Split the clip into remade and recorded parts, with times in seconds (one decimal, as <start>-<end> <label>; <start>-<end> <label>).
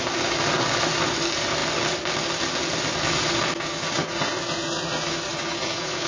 0.0-6.1 recorded